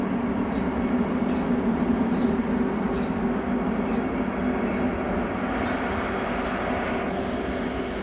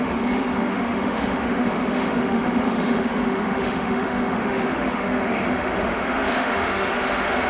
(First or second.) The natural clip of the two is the first